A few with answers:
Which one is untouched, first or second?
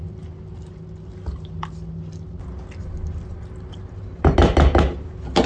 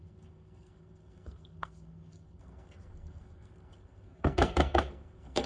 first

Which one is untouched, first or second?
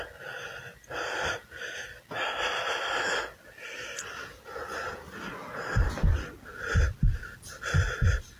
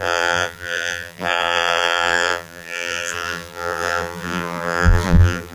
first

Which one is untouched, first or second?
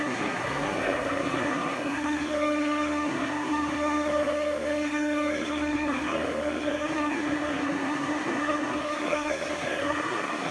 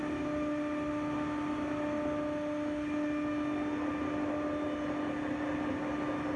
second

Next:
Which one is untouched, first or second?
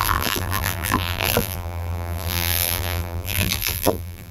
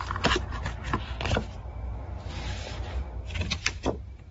second